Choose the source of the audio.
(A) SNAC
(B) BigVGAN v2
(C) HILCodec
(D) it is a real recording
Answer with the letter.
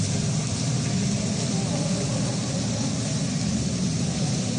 B